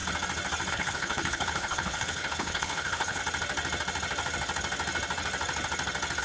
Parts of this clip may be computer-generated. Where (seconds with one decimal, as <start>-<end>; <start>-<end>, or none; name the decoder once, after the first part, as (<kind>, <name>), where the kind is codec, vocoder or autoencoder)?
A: 0.7-3.2 (codec, HILCodec)